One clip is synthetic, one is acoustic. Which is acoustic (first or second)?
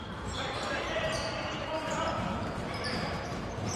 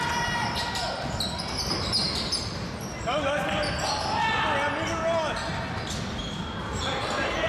second